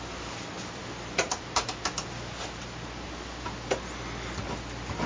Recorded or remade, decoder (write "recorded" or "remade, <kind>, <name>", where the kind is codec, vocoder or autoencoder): recorded